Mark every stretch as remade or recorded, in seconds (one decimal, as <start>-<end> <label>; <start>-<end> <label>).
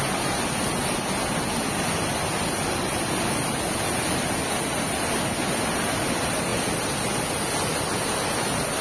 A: 0.0-8.8 recorded